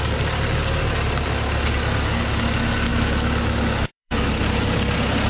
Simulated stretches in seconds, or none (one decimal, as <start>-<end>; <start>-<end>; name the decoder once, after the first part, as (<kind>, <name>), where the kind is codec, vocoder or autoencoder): 2.9-4.3 (autoencoder, DAC-VAE)